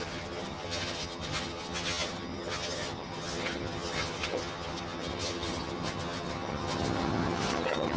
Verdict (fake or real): fake